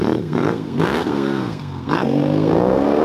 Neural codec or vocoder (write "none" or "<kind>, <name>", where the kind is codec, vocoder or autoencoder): codec, SNAC